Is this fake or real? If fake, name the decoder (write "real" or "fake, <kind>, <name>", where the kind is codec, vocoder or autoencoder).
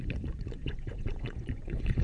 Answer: fake, vocoder, Vocos